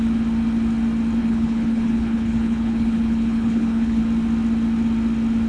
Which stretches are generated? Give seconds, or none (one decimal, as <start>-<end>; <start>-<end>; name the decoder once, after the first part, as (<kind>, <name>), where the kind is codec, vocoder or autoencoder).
1.2-4.0 (codec, HILCodec)